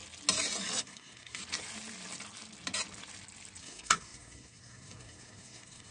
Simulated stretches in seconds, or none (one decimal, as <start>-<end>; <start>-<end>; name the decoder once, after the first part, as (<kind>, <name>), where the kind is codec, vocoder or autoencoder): 0.8-1.4 (codec, SNAC); 3.6-5.9